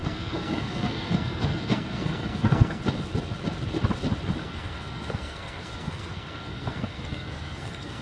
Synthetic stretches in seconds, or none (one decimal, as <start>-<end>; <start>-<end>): 0.0-2.8; 4.4-8.0